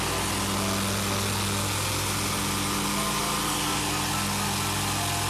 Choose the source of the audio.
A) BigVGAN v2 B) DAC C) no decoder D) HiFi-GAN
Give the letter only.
C